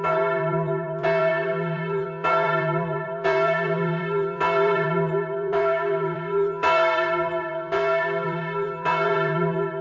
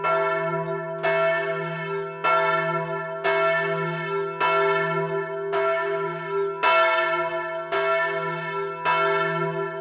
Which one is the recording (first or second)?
second